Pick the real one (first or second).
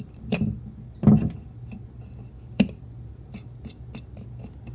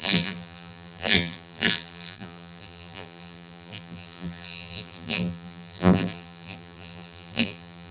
first